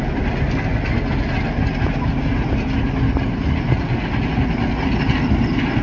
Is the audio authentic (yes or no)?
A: yes